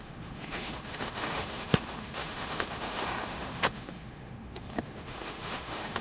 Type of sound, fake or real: fake